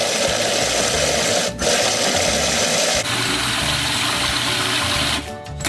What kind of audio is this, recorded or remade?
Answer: recorded